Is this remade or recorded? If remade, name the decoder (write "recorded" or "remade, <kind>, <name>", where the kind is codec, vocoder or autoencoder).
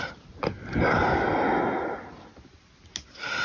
recorded